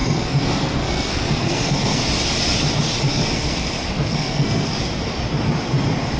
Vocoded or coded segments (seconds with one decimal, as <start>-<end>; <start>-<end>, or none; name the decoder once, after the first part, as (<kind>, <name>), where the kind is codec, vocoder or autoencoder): 0.0-2.0 (codec, SNAC); 3.1-4.8